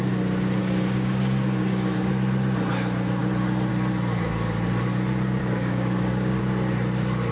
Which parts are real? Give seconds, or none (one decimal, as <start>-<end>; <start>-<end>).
0.0-0.6; 2.1-5.4; 6.4-7.3